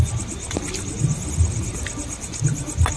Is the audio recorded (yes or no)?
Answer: yes